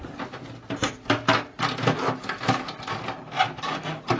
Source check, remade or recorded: recorded